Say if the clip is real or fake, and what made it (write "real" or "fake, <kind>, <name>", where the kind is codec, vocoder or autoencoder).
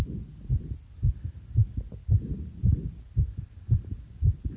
real